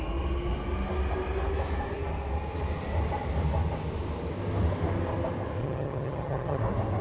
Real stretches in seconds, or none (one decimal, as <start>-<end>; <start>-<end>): 0.0-5.6; 6.6-7.0